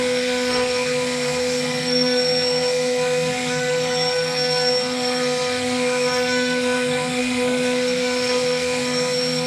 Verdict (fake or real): fake